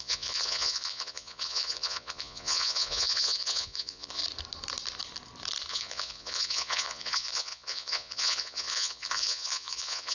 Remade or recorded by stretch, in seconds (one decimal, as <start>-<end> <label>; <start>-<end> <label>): 0.0-4.2 remade; 4.2-5.7 recorded; 5.7-10.1 remade